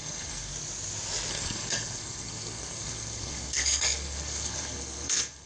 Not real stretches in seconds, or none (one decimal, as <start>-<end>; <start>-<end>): 0.0-0.5; 1.3-5.5